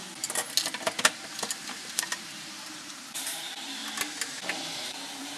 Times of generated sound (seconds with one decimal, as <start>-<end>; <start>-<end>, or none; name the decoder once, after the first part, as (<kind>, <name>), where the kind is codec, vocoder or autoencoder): 1.3-3.8 (vocoder, BigVGAN v2); 4.8-5.4